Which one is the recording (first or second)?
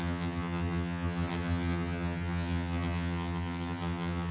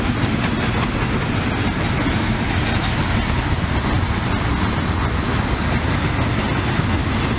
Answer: second